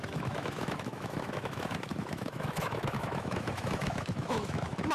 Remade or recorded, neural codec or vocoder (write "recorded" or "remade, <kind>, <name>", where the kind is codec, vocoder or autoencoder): remade, autoencoder, DAC-VAE